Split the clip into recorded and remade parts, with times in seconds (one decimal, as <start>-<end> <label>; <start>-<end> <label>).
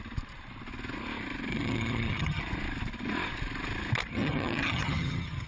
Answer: 0.0-1.5 recorded; 1.5-2.4 remade; 2.4-4.1 recorded; 4.1-5.5 remade